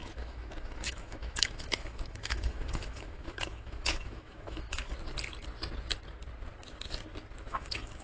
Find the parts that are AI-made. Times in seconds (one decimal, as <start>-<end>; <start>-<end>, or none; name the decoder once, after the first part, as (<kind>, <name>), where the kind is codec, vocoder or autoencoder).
0.0-4.9 (autoencoder, DAC-VAE); 7.5-8.0